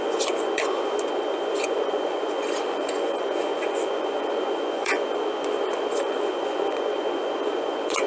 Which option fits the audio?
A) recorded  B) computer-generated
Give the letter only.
B